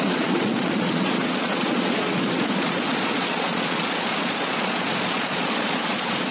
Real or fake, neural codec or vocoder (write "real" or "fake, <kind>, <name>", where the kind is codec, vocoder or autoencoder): fake, vocoder, Vocos